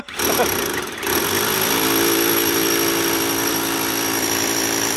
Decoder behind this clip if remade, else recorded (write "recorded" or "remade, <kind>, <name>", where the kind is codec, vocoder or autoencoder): remade, vocoder, BigVGAN v2